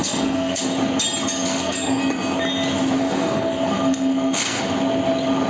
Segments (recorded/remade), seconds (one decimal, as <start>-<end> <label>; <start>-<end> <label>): 0.0-0.6 remade; 0.6-1.5 recorded; 1.5-2.0 remade; 2.0-3.0 recorded; 3.0-4.6 remade; 4.6-5.5 recorded